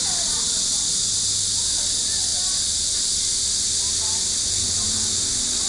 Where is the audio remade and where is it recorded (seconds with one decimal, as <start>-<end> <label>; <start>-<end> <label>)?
0.0-5.7 recorded